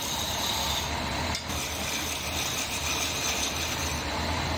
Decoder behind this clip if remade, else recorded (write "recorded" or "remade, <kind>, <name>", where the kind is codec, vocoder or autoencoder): recorded